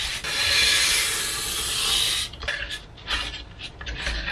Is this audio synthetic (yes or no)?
no